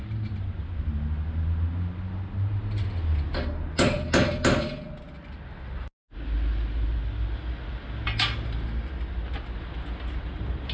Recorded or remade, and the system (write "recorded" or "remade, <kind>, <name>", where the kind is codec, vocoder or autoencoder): recorded